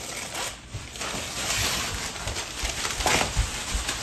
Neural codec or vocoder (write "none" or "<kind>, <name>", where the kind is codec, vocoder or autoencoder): vocoder, BigVGAN v2